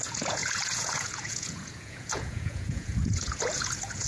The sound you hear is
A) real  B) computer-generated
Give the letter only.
B